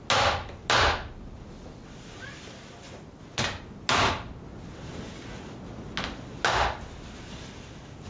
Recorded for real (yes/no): yes